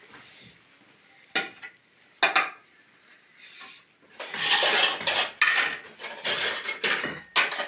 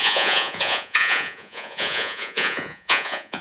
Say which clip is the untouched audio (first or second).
first